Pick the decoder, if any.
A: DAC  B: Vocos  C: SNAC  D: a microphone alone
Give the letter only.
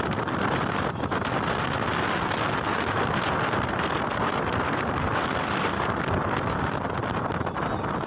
D